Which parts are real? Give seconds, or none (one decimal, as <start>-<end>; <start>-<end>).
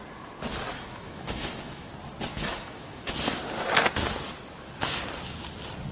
0.0-0.7; 1.9-2.3; 3.1-5.9